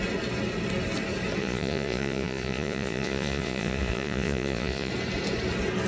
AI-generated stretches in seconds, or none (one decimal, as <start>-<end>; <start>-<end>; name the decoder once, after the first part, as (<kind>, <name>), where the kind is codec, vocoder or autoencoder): 1.4-4.9 (vocoder, Vocos)